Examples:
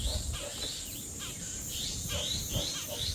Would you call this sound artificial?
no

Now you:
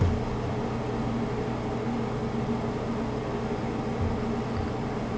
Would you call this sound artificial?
no